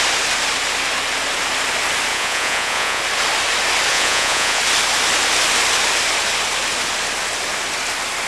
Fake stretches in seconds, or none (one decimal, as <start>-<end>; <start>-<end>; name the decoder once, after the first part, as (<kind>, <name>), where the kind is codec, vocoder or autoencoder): 2.1-3.0 (vocoder, Vocos); 3.9-4.6